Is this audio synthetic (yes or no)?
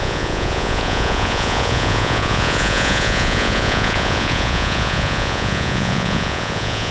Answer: yes